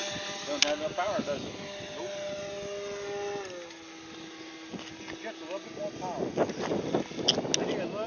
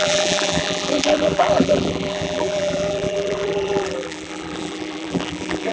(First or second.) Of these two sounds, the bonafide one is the first